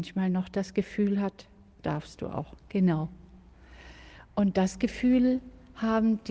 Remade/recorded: recorded